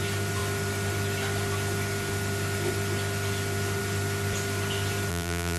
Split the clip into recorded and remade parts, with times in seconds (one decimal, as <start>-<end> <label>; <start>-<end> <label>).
0.0-5.1 recorded; 5.1-5.6 remade